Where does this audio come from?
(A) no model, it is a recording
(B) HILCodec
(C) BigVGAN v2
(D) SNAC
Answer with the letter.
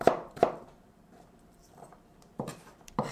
C